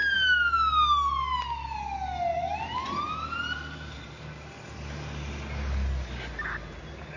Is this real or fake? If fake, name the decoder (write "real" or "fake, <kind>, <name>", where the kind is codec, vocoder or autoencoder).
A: real